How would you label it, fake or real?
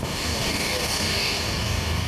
fake